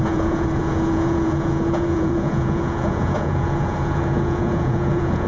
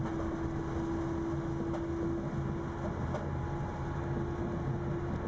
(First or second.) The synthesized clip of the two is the first